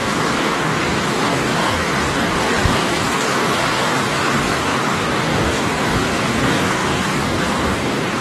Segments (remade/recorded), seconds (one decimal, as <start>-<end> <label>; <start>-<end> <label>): 0.0-8.2 remade